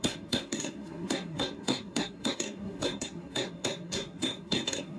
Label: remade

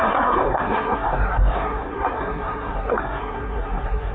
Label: remade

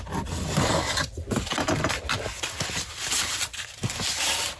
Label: recorded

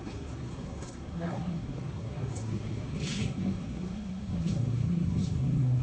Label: remade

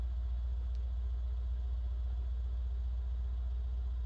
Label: recorded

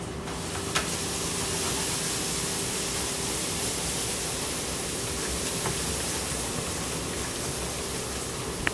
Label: recorded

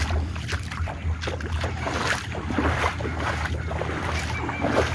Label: recorded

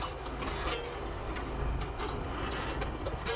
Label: recorded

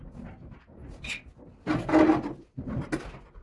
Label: recorded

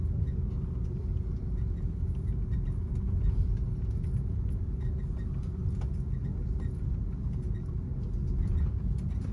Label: recorded